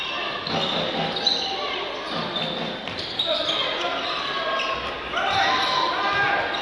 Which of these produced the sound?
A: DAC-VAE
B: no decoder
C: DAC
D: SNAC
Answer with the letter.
B